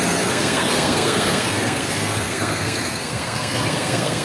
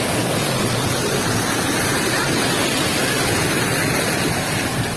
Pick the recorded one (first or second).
second